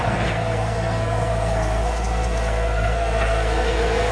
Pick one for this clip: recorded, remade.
remade